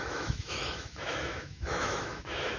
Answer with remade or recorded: remade